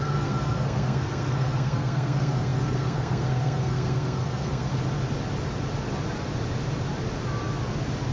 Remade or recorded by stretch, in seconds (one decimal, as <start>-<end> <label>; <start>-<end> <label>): 0.0-4.7 remade; 4.7-8.1 recorded